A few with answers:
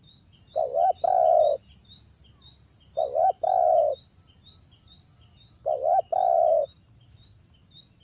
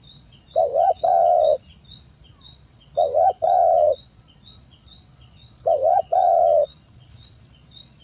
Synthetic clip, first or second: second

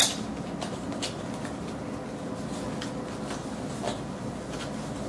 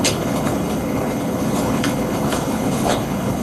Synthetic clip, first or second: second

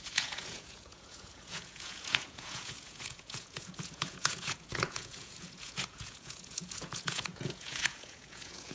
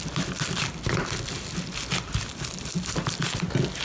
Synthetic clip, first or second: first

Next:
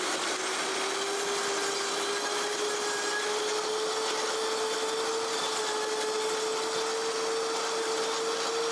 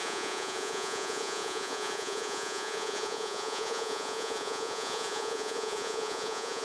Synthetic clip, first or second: second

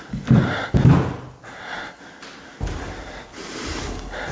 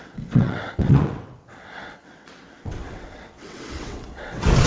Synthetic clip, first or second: second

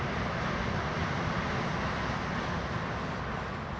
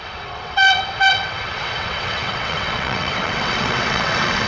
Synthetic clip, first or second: second